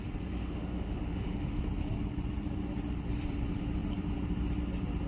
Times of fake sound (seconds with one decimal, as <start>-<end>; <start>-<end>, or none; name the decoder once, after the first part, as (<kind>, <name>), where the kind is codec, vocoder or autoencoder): 0.4-1.6 (autoencoder, DAC-VAE)